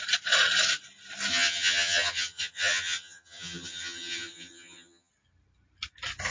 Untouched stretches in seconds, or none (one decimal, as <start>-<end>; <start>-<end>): 0.0-1.3; 5.1-6.3